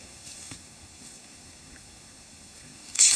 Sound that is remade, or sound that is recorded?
remade